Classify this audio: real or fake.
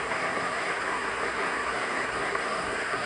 fake